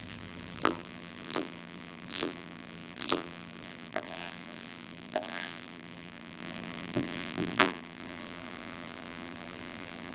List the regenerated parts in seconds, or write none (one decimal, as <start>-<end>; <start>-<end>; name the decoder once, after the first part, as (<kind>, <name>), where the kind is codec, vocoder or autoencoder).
0.0-10.1 (vocoder, BigVGAN v2)